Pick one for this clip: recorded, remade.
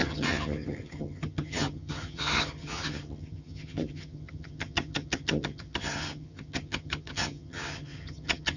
remade